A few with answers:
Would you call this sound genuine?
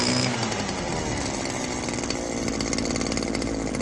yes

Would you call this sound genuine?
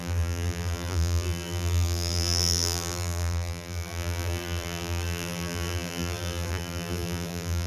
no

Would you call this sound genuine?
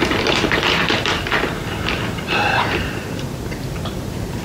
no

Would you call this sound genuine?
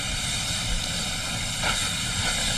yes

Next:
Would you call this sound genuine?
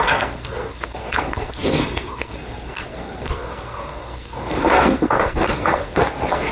no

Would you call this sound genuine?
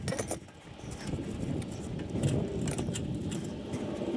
yes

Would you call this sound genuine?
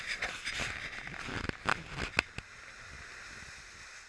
yes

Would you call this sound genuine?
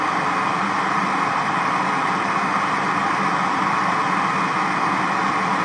yes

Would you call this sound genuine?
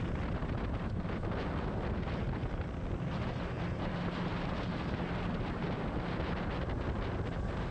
yes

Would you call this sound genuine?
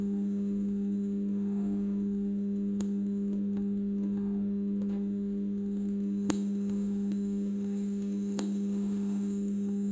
no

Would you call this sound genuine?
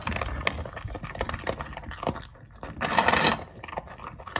yes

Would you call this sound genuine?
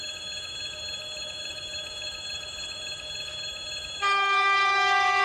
no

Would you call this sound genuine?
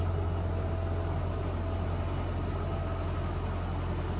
yes